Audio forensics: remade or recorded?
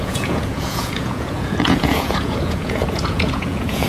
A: remade